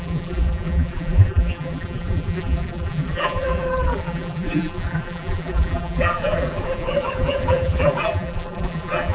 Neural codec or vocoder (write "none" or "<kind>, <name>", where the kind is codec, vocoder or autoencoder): vocoder, BigVGAN v2